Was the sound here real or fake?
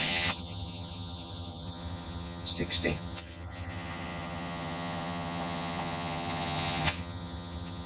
fake